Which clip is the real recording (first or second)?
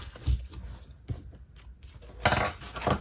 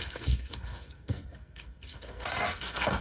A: first